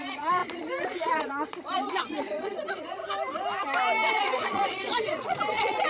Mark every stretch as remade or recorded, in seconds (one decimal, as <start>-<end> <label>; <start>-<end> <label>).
0.0-3.0 remade; 3.0-4.1 recorded; 4.1-5.9 remade